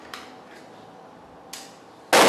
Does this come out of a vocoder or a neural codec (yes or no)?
no